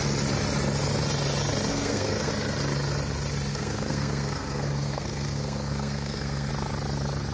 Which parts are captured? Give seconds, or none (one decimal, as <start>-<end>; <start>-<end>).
0.0-1.7; 2.3-3.5; 6.5-7.3